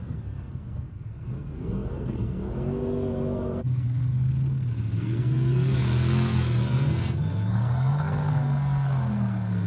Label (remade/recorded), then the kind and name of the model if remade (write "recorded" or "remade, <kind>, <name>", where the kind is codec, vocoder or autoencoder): remade, codec, SNAC